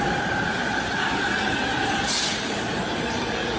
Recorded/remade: remade